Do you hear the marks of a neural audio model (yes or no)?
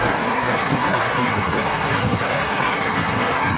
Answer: yes